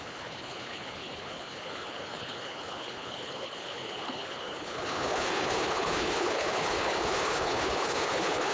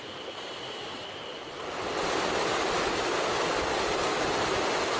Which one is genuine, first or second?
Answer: second